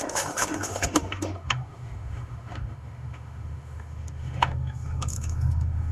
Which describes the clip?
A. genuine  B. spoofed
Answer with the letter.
B